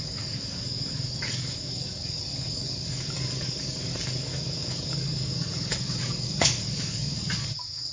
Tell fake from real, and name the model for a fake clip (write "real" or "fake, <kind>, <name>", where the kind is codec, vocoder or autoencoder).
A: fake, codec, DAC